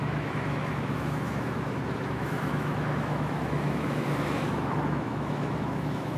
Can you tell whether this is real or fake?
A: fake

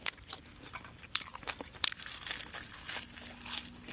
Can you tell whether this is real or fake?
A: real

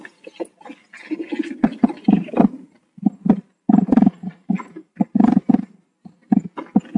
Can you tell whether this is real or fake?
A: real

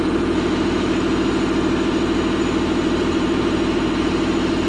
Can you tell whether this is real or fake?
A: fake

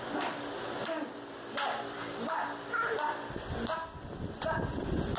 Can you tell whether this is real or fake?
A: real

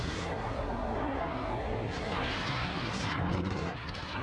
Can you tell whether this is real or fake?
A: fake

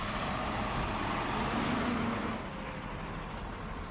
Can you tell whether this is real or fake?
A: real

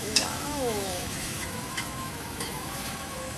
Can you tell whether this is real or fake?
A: fake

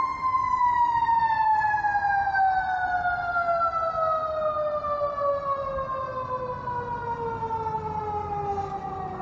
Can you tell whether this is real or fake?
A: real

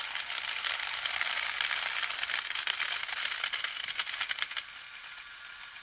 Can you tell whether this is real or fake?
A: real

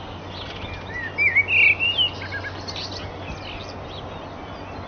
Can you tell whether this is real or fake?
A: real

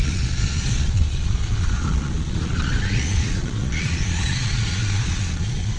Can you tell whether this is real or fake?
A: fake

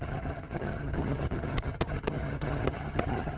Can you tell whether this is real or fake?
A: fake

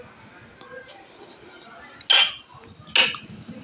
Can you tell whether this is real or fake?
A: real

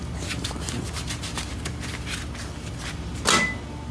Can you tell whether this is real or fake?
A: real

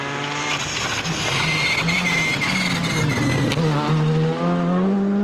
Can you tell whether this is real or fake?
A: real